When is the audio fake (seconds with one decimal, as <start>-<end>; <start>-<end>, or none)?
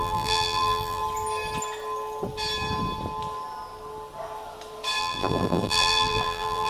0.0-1.0; 5.0-6.7